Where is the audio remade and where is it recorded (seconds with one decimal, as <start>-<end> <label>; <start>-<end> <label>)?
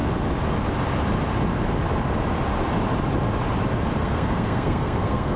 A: 0.0-4.0 recorded; 4.0-5.4 remade